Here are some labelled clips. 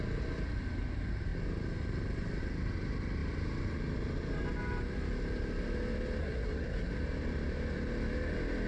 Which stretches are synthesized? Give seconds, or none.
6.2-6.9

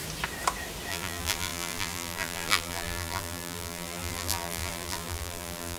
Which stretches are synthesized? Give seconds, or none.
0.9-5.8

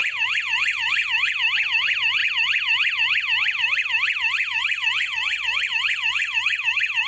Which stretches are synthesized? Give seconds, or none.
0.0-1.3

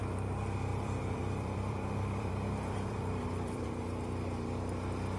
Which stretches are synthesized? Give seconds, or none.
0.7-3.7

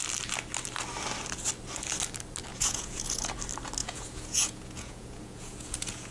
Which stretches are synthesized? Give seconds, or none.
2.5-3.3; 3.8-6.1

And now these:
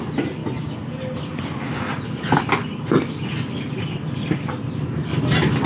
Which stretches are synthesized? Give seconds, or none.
none

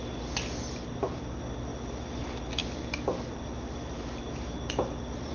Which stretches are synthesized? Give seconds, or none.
none